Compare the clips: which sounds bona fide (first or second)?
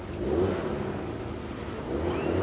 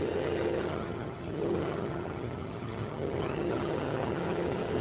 first